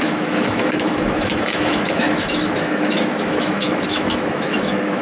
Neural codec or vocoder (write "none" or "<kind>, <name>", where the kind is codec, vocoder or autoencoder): autoencoder, DAC-VAE